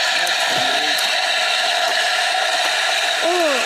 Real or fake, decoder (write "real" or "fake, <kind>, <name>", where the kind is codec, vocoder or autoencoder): real